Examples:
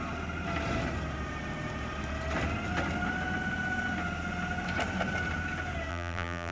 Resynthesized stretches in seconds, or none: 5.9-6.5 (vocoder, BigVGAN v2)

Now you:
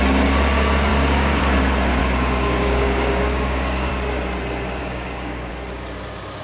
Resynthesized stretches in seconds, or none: 0.9-1.4 (codec, DAC); 2.0-3.9; 4.8-5.5

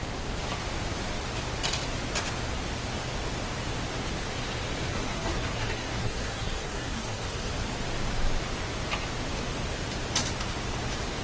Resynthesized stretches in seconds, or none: 4.9-7.5 (codec, SNAC)

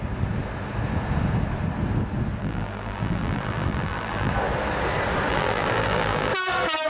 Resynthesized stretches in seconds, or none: 2.4-4.3 (vocoder, BigVGAN v2); 5.3-6.3

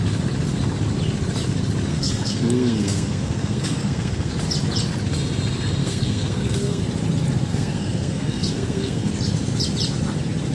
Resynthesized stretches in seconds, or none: 1.9-4.3 (codec, SNAC); 5.8-6.8; 7.5-9.1

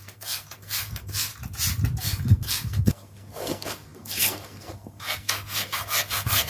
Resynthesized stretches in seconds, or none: 0.0-1.3 (codec, SNAC); 2.0-6.5

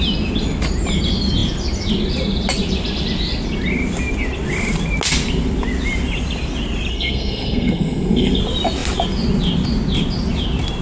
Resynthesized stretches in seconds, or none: 6.9-8.4 (codec, SNAC)

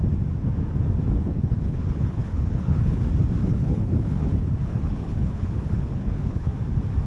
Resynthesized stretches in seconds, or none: 1.2-3.0 (codec, HILCodec); 3.4-6.5